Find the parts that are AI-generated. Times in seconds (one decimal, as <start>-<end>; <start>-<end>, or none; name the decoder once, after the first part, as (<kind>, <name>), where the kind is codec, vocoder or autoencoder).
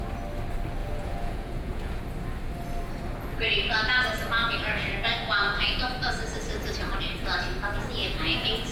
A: 0.8-2.0 (vocoder, Vocos); 4.4-6.1; 8.0-8.7